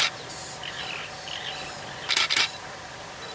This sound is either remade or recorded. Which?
recorded